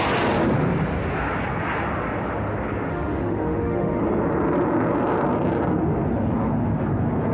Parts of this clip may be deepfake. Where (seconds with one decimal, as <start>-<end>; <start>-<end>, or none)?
2.9-4.0